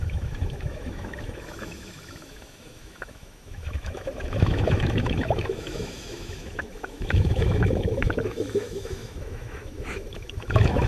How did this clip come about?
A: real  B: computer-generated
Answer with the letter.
B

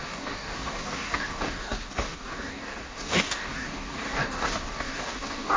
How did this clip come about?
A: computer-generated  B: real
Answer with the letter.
A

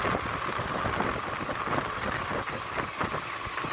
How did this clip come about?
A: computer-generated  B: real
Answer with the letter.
B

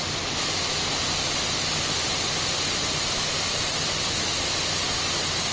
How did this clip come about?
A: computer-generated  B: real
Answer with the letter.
B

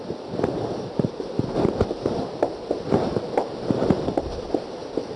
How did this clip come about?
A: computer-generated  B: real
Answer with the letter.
A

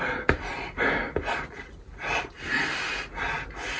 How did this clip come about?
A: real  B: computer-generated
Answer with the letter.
A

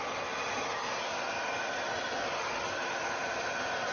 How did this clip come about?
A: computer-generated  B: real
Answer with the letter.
B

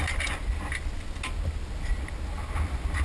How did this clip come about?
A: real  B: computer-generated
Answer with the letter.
A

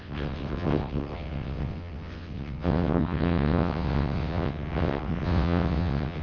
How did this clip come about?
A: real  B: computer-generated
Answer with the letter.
B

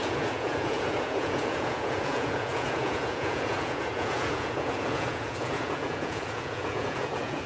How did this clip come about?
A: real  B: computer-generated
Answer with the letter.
B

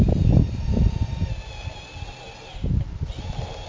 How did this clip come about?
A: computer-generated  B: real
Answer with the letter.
B